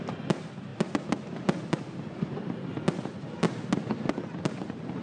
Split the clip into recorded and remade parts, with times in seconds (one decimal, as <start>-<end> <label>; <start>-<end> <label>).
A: 0.0-5.0 recorded